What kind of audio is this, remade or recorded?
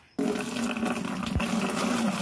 recorded